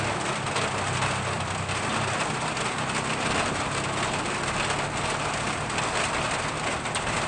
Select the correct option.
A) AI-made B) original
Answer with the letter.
B